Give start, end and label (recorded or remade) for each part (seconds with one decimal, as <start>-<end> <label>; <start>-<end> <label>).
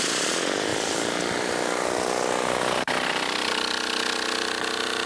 0.0-0.7 recorded; 0.7-3.5 remade; 3.5-5.1 recorded